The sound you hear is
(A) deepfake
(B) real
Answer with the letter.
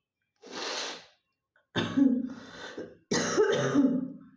B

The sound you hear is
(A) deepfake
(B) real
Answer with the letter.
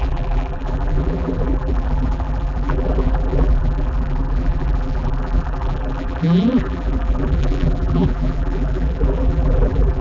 A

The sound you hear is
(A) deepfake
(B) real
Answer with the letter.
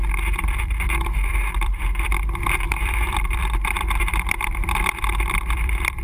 A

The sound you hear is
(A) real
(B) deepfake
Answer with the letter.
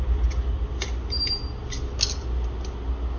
A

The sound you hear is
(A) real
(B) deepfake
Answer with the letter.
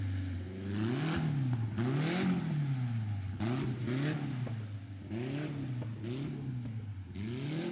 A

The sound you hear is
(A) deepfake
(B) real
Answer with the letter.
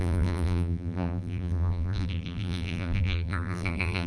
A